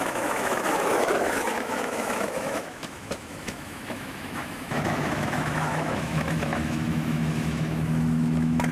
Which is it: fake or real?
fake